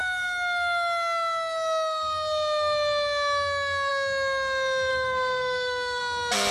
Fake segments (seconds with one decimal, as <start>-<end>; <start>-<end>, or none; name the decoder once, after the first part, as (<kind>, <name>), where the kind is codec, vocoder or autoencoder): 4.9-6.0 (codec, SNAC)